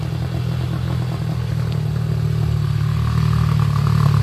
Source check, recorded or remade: recorded